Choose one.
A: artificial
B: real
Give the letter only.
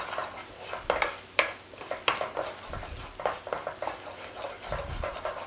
B